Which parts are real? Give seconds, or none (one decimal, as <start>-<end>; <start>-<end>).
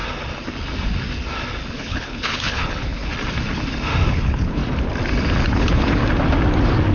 0.0-1.7; 3.1-4.1; 4.6-5.5; 6.0-6.9